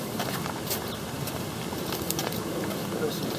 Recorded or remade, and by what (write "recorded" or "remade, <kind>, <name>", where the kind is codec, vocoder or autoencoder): recorded